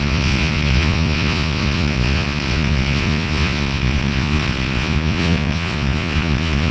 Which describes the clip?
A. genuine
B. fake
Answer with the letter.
B